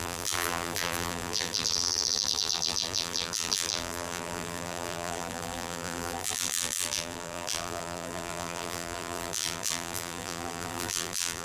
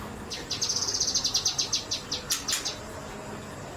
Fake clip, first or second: first